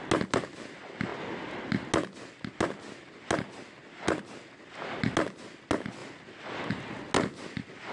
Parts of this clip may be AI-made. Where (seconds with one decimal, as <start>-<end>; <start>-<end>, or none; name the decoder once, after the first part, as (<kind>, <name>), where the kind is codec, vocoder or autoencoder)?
none